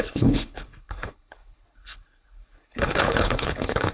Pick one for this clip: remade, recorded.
remade